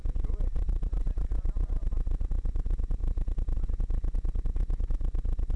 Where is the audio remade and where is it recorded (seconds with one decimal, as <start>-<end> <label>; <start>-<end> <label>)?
0.0-0.5 recorded; 0.5-1.7 remade; 1.7-5.6 recorded